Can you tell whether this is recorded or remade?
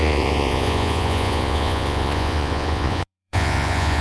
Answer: remade